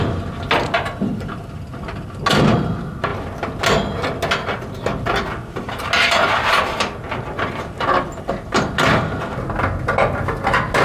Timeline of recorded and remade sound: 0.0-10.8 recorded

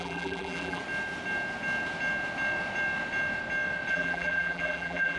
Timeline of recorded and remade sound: 0.0-0.8 remade; 0.8-3.9 recorded; 3.9-5.2 remade

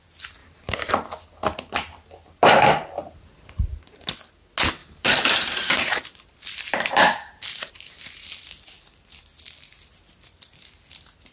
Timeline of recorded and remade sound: 0.0-0.4 recorded; 0.4-0.9 remade; 0.9-2.4 recorded; 2.4-3.7 remade; 3.7-4.8 recorded; 4.8-7.7 remade; 7.7-11.3 recorded

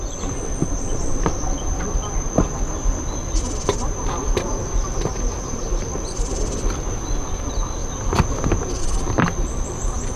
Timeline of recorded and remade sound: 0.0-3.2 recorded; 3.2-6.8 remade; 6.8-10.2 recorded

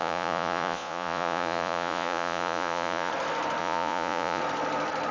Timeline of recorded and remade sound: 0.0-3.1 remade; 3.1-3.6 recorded; 3.6-4.4 remade; 4.4-5.1 recorded

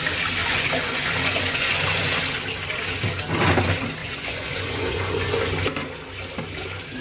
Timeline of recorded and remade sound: 0.0-0.4 recorded; 0.4-2.2 remade; 2.2-4.0 recorded; 4.0-5.5 remade; 5.5-7.0 recorded

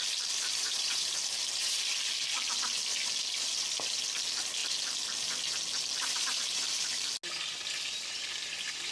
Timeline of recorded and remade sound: 0.0-0.6 recorded; 0.6-1.1 remade; 1.1-8.9 recorded

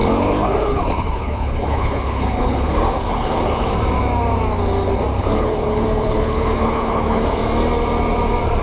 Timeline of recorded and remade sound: 0.0-3.7 remade; 3.7-5.2 recorded; 5.2-7.4 remade; 7.4-8.6 recorded